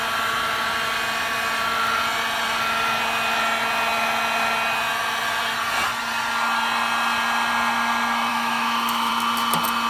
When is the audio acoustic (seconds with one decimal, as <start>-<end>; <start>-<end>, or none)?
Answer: 0.0-8.3; 9.1-9.9